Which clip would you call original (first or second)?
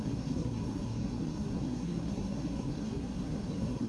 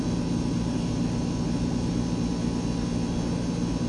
second